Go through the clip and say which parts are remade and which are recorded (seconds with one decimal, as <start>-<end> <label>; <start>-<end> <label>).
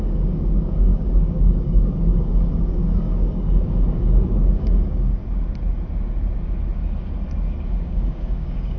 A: 0.0-5.2 remade; 5.2-7.8 recorded; 7.8-8.8 remade